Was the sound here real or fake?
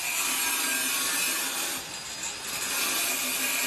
real